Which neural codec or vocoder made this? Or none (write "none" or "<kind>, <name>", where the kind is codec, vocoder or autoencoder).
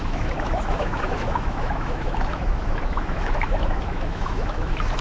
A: autoencoder, DAC-VAE